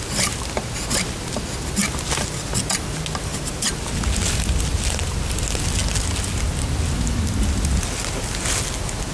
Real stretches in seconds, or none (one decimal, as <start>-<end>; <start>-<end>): 0.0-9.1